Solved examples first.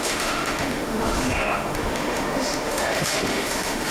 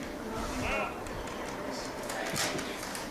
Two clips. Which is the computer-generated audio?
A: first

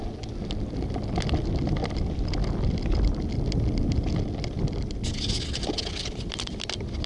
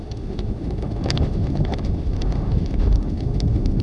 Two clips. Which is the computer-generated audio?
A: second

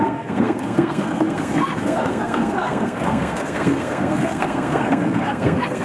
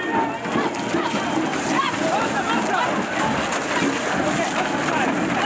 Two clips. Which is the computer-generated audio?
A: first